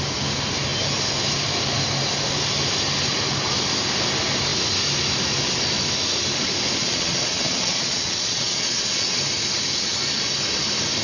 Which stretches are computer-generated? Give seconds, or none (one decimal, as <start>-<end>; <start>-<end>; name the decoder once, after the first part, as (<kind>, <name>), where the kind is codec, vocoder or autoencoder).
6.8-9.2 (vocoder, Vocos)

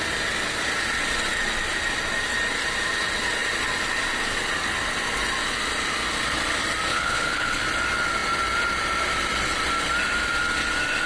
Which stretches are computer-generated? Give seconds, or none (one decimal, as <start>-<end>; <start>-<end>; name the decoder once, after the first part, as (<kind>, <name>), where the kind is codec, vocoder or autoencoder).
6.9-7.6 (codec, HILCodec)

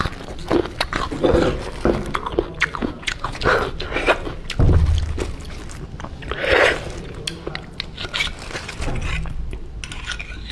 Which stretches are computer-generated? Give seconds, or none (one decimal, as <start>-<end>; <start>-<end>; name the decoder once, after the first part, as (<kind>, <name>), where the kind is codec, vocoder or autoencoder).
2.8-3.4 (vocoder, Vocos)

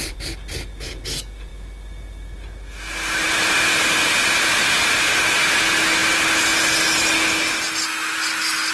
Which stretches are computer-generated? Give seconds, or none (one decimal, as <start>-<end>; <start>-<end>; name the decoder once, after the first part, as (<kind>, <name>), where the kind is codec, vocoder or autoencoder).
none

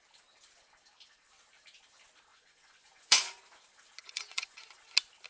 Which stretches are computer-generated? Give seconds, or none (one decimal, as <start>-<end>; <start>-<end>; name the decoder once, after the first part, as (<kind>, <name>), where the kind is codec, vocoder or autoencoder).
2.3-3.4 (vocoder, Vocos); 4.0-4.6

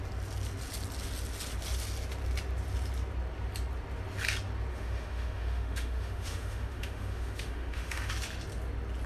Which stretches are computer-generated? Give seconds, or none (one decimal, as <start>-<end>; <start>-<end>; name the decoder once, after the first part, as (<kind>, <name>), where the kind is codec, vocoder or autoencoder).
4.7-8.1 (autoencoder, DAC-VAE)

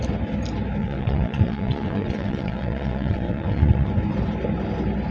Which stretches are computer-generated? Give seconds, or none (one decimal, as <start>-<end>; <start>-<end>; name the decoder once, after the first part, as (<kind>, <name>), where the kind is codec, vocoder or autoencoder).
0.8-3.9 (vocoder, WaveNeXt)

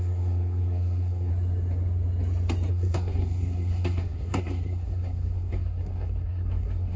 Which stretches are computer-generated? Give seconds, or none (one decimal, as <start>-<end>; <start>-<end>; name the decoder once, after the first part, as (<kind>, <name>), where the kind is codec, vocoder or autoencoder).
0.0-1.3 (codec, SNAC); 2.7-7.0